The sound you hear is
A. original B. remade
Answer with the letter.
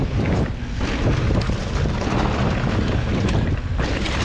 A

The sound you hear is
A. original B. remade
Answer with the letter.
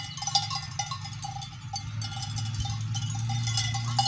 A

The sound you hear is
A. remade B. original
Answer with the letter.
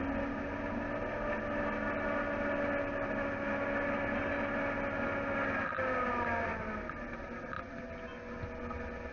B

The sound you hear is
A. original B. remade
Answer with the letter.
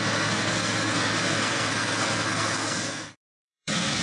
B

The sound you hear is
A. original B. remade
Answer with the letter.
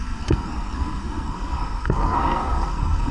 B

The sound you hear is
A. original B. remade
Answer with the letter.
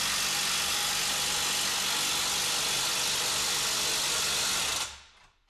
A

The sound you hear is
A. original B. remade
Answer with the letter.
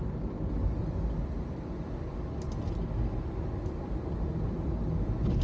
A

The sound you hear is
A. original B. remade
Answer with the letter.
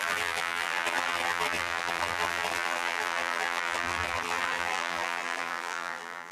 B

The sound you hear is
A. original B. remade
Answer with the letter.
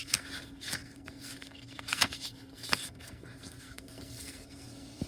B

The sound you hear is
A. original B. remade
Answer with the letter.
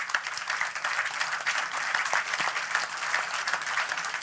A